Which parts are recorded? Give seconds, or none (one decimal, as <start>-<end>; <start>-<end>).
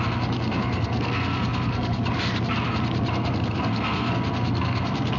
2.0-3.1